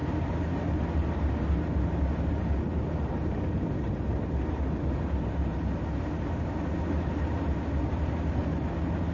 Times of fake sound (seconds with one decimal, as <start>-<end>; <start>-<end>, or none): none